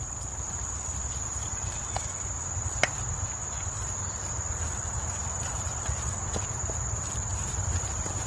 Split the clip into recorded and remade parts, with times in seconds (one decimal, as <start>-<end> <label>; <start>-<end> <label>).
0.0-8.3 recorded